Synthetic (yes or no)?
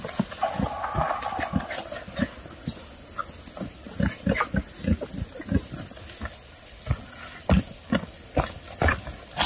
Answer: no